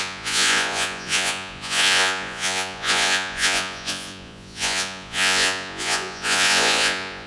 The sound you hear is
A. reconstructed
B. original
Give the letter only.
A